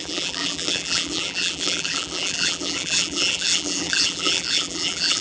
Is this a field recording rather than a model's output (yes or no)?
no